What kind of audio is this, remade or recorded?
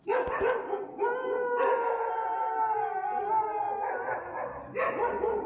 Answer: recorded